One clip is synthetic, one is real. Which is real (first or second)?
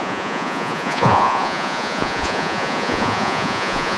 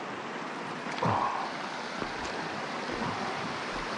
second